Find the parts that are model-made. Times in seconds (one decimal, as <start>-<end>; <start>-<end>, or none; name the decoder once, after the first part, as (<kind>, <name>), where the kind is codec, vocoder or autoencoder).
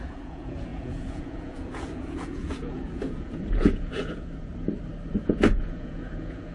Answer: 0.0-4.5 (vocoder, Vocos); 5.2-6.5